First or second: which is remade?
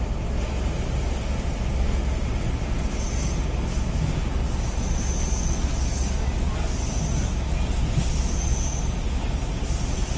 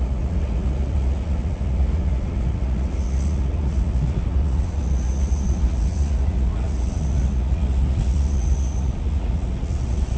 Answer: second